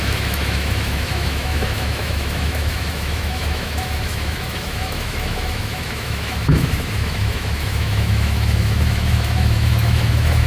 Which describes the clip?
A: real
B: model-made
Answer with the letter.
B